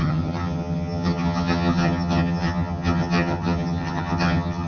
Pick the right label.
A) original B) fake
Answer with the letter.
B